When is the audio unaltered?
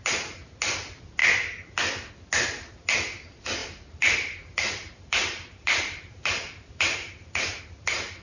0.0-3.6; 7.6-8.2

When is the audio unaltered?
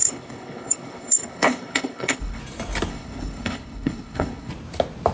2.4-2.9; 4.5-5.1